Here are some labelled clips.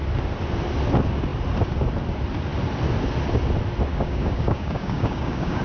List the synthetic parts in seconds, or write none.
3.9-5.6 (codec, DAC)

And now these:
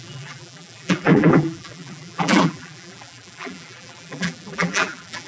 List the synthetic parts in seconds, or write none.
0.0-5.3 (vocoder, BigVGAN v2)

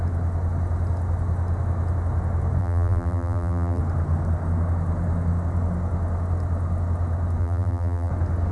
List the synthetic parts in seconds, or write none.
2.6-3.8 (vocoder, BigVGAN v2); 7.4-8.1

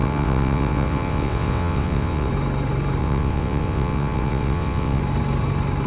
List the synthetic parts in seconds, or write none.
0.0-2.3 (vocoder, WaveNeXt); 3.0-5.0

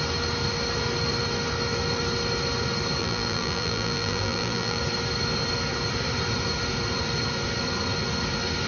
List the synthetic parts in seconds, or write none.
3.0-4.8 (vocoder, BigVGAN v2)